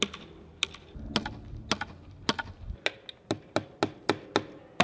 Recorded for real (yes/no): yes